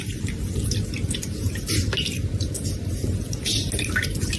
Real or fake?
real